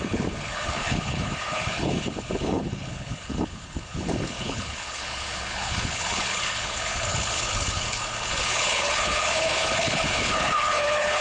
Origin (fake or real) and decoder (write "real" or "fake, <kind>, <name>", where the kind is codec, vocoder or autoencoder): fake, codec, HILCodec